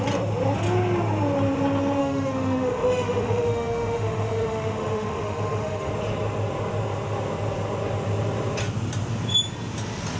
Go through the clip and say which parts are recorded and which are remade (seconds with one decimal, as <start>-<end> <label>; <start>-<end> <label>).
0.0-2.0 recorded; 2.0-5.9 remade; 5.9-10.2 recorded